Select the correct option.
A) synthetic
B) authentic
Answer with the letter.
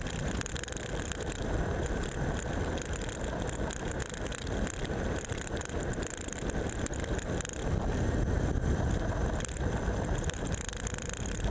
B